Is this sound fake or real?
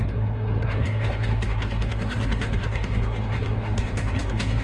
fake